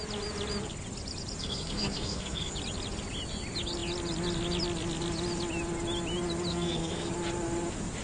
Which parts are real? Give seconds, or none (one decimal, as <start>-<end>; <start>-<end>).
0.0-1.4; 2.5-6.5; 7.1-8.0